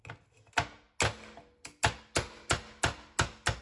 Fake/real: real